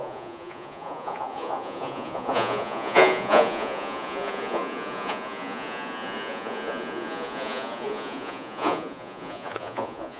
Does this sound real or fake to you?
fake